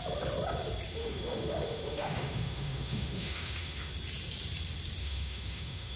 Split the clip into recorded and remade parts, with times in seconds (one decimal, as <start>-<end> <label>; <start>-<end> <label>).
0.0-1.0 recorded; 1.0-3.9 remade; 3.9-5.0 recorded; 5.0-6.0 remade